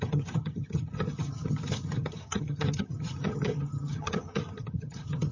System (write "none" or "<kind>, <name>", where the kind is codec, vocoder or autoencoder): vocoder, HiFi-GAN